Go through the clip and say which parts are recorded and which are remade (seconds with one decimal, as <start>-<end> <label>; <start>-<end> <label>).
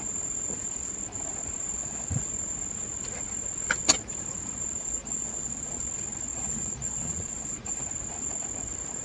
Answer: 0.0-1.8 recorded; 1.8-2.3 remade; 2.3-4.8 recorded; 4.8-5.8 remade; 5.8-6.3 recorded; 6.3-7.8 remade; 7.8-9.0 recorded